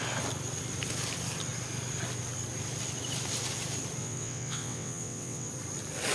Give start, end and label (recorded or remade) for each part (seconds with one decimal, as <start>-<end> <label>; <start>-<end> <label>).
0.0-4.0 recorded; 4.0-5.5 remade; 5.5-6.1 recorded